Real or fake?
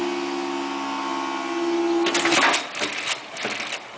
real